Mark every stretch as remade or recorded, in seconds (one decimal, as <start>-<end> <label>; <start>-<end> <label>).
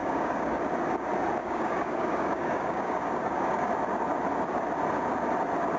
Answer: 0.0-0.6 remade; 0.6-1.4 recorded; 1.4-3.7 remade; 3.7-5.8 recorded